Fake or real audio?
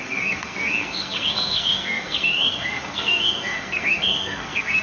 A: fake